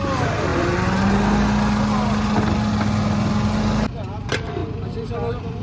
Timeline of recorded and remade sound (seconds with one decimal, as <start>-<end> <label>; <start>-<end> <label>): 0.0-5.6 recorded

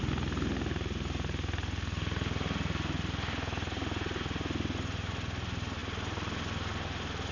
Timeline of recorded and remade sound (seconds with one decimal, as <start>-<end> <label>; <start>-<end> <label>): 0.0-7.3 recorded

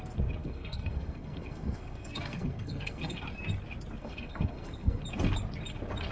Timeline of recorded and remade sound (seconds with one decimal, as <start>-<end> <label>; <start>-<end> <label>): 0.0-0.4 recorded; 0.4-3.2 remade; 3.2-4.0 recorded; 4.0-5.0 remade; 5.0-6.1 recorded

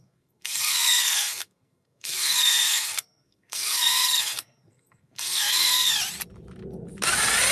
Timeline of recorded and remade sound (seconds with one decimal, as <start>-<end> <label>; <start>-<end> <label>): 0.0-5.9 remade; 5.9-7.5 recorded

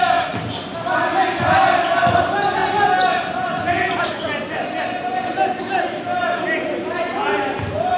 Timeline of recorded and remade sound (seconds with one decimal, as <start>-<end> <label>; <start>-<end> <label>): 0.0-8.0 recorded

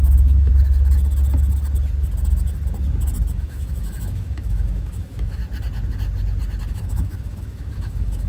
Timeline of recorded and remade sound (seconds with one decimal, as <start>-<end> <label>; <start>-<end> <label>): 0.0-0.5 remade; 0.5-3.3 recorded; 3.3-5.4 remade; 5.4-6.7 recorded; 6.7-8.3 remade

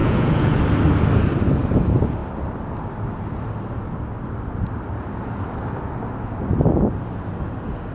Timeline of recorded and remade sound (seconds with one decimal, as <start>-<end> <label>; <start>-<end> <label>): 0.0-0.6 remade; 0.6-7.9 recorded

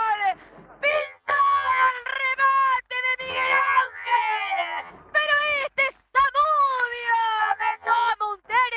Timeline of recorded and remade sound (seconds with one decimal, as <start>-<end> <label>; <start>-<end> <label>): 0.0-0.9 recorded; 0.9-1.9 remade; 1.9-3.3 recorded; 3.3-4.9 remade; 4.9-7.4 recorded; 7.4-8.1 remade; 8.1-8.8 recorded